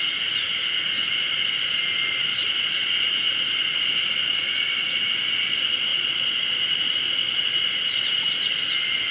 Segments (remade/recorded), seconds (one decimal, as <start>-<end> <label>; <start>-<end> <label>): 0.0-2.3 recorded; 2.3-2.9 remade; 2.9-5.9 recorded; 5.9-6.6 remade; 6.6-9.1 recorded